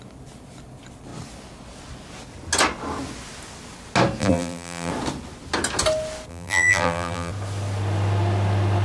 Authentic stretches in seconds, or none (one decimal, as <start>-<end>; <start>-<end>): 0.0-4.2; 4.9-6.3; 7.3-8.8